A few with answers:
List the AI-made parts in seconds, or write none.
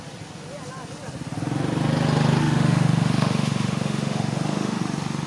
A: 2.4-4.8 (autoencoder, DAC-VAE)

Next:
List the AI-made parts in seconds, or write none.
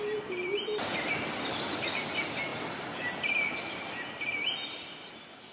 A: none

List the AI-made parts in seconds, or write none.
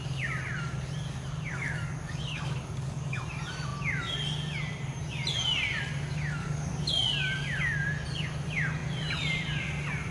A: 1.5-3.2 (codec, DAC); 6.4-6.9